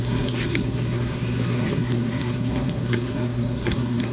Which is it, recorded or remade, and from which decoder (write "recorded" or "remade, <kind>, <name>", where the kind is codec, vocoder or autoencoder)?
remade, codec, SNAC